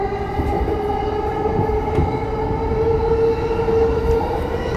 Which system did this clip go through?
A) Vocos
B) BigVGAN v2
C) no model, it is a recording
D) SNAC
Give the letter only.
C